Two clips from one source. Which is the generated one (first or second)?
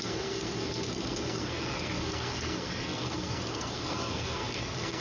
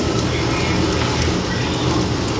first